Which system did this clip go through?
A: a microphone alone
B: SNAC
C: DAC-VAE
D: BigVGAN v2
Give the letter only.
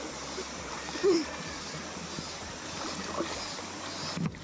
A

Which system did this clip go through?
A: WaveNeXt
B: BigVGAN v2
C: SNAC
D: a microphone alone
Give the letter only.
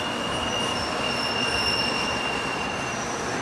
D